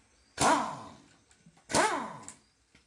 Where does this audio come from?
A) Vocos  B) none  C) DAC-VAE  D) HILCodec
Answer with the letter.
B